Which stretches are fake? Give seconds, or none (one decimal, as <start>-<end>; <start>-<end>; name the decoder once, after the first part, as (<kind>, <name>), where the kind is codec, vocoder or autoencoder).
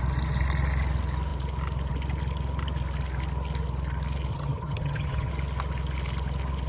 4.3-5.3 (vocoder, HiFi-GAN)